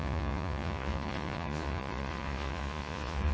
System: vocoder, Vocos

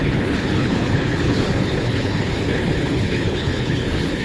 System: codec, HILCodec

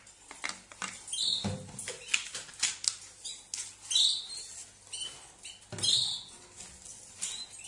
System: none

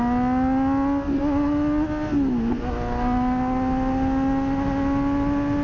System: none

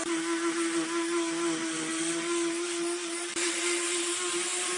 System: none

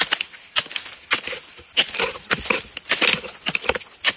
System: none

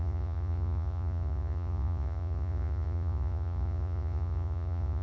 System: vocoder, Vocos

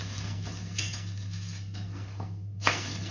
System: codec, SNAC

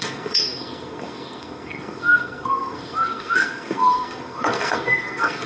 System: codec, SNAC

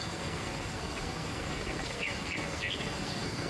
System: codec, SNAC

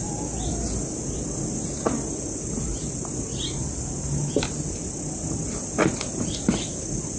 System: none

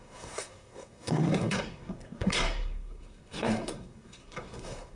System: codec, SNAC